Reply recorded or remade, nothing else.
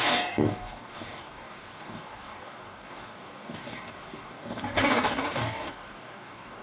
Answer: remade